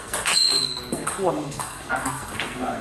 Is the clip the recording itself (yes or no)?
no